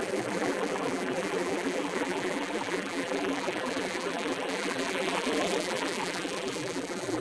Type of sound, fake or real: fake